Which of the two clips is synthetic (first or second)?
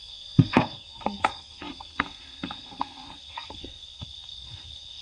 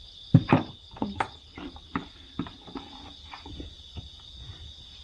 first